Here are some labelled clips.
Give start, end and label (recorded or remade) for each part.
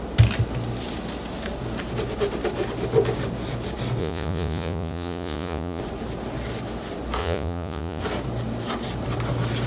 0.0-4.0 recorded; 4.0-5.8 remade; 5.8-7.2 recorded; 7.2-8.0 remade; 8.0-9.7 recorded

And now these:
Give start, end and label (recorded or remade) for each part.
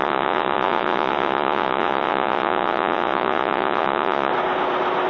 0.0-4.3 remade; 4.3-5.1 recorded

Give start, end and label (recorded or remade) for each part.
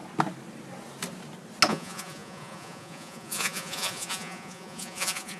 0.0-1.7 recorded; 1.7-5.4 remade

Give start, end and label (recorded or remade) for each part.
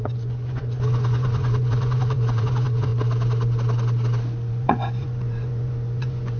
0.0-2.9 remade; 2.9-4.5 recorded; 4.5-6.4 remade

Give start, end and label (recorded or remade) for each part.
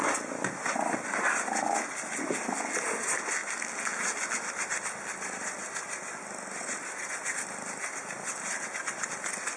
0.0-9.6 recorded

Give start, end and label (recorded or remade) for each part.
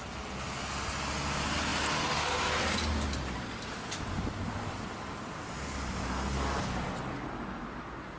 0.0-8.2 recorded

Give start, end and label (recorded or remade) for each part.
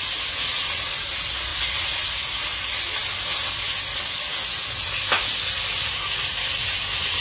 0.0-0.5 recorded; 0.5-1.1 remade; 1.1-1.5 recorded; 1.5-2.1 remade; 2.1-7.2 recorded